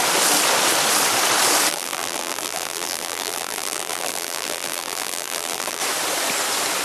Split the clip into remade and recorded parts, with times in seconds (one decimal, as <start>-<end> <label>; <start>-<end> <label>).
0.0-1.7 recorded; 1.7-5.8 remade; 5.8-6.8 recorded